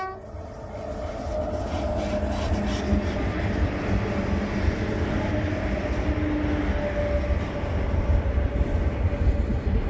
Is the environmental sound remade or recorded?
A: recorded